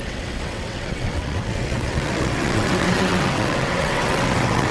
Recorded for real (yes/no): no